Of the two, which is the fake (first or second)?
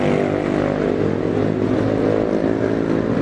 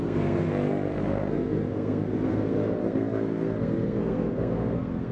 second